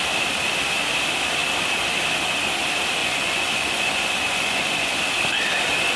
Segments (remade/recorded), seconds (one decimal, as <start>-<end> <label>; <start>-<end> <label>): 0.0-3.0 recorded; 3.0-5.0 remade; 5.0-6.0 recorded